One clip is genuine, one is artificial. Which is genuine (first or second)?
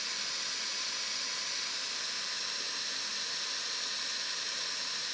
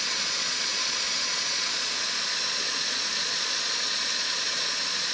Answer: first